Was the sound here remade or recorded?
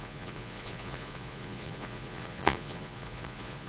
remade